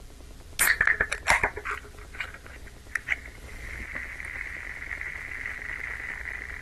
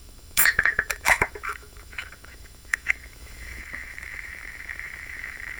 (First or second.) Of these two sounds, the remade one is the second